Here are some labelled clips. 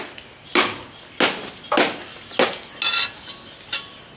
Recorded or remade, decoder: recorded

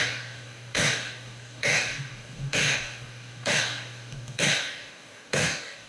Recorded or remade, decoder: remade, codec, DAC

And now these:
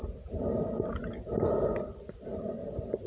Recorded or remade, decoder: recorded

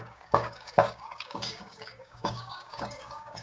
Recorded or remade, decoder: remade, codec, DAC